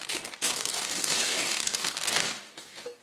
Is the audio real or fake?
fake